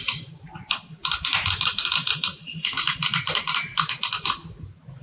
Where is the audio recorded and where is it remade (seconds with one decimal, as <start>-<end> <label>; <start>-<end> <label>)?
0.0-1.0 recorded; 1.0-4.0 remade; 4.0-5.0 recorded

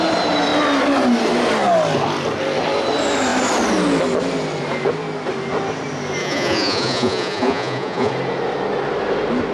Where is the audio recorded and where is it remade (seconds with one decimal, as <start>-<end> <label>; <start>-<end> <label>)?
0.0-6.2 recorded; 6.2-8.1 remade; 8.1-9.5 recorded

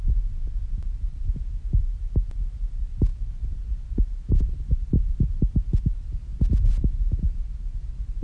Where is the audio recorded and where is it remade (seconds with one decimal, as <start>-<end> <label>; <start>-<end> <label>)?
0.0-8.2 recorded

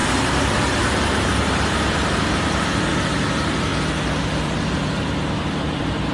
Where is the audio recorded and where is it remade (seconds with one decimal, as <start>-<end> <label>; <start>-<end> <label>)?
0.0-3.7 remade; 3.7-4.7 recorded; 4.7-6.1 remade

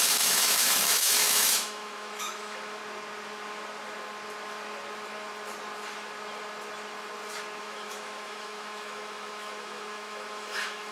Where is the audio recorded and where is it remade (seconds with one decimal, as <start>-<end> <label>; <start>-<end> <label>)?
0.0-2.8 remade; 2.8-7.6 recorded; 7.6-10.9 remade

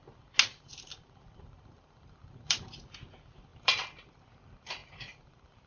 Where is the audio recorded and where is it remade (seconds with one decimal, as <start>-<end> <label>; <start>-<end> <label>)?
0.0-0.5 recorded; 0.5-3.1 remade; 3.1-3.5 recorded; 3.5-4.3 remade; 4.3-4.8 recorded; 4.8-5.7 remade

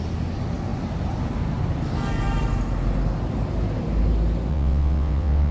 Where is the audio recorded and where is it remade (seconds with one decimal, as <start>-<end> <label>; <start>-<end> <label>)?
0.0-4.5 recorded; 4.5-5.5 remade